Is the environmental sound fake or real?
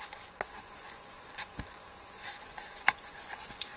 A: fake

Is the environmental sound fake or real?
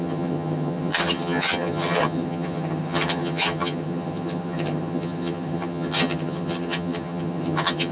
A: fake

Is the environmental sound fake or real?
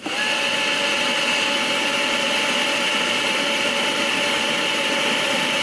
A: real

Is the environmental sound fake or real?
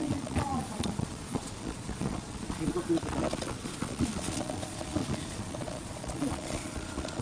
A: fake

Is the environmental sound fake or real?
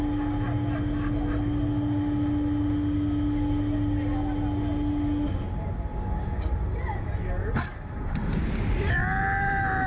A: real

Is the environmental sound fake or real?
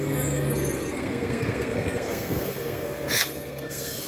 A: fake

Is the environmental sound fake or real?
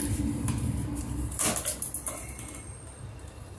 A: real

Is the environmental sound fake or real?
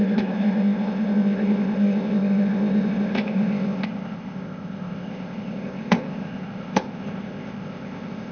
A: fake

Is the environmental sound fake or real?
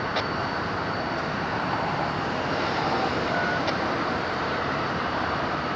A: fake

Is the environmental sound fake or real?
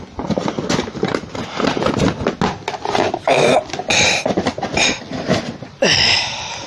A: real